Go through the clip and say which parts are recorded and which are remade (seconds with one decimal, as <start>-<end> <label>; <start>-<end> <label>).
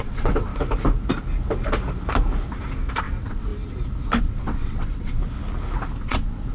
0.0-0.5 remade; 0.5-3.0 recorded; 3.0-3.5 remade; 3.5-4.2 recorded; 4.2-5.2 remade; 5.2-6.0 recorded; 6.0-6.5 remade